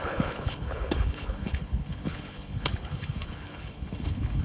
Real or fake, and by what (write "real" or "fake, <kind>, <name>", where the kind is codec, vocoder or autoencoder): fake, codec, HILCodec